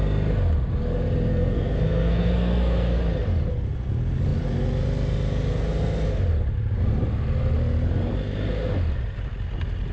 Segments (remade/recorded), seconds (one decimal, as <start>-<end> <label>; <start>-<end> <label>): 0.0-1.3 recorded; 1.3-3.0 remade; 3.0-9.9 recorded